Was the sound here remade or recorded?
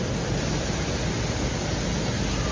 recorded